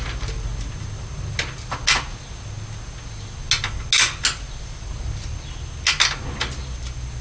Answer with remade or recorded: recorded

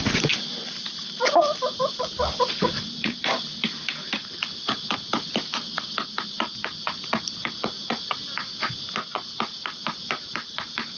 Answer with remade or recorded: remade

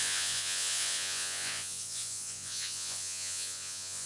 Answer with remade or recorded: remade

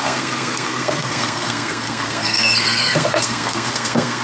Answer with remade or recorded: remade